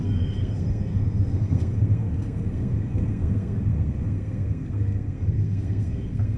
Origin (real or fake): fake